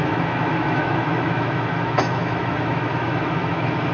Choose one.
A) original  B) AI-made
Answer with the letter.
B